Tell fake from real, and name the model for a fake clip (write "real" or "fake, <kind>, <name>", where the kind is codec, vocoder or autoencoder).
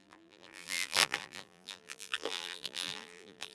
fake, vocoder, BigVGAN v2